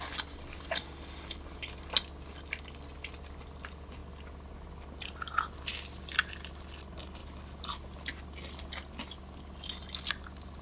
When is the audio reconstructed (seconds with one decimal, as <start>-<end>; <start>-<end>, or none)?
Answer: none